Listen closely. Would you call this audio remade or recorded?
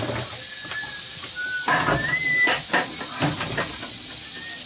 recorded